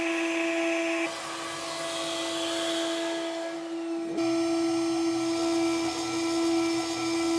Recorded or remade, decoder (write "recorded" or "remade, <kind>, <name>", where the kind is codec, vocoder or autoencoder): recorded